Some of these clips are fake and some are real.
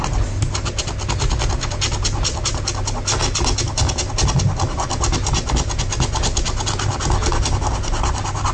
real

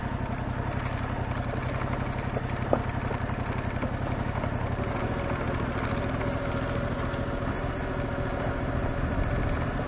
real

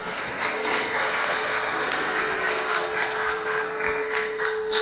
fake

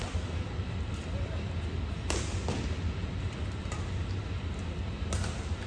real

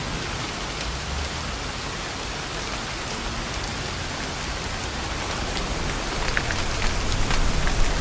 real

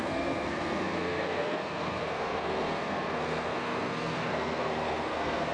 fake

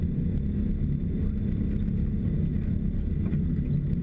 real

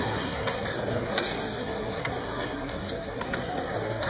fake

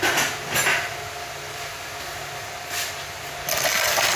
real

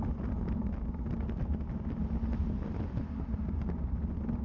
real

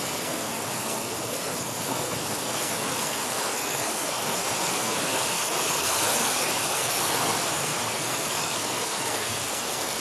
fake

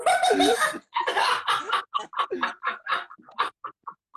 real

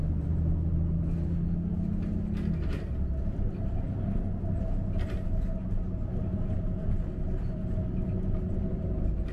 real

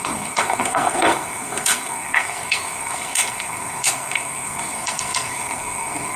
fake